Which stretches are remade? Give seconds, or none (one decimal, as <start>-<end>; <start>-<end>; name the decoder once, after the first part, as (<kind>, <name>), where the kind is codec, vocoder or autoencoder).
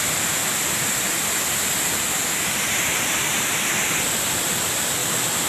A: 0.0-0.4 (vocoder, BigVGAN v2); 1.9-5.0